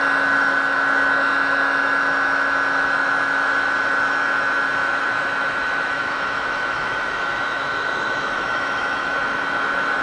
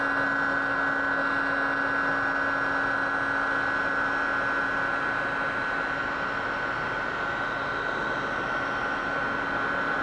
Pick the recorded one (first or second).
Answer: second